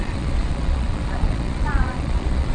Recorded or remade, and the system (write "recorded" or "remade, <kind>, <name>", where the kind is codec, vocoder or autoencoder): remade, vocoder, Vocos